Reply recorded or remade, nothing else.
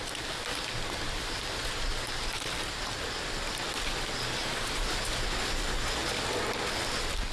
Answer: recorded